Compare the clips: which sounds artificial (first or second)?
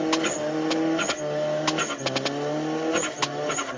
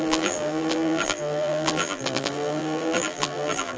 second